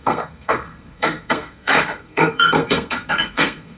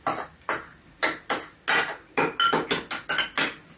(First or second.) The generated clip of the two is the first